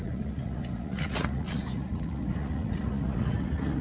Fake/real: fake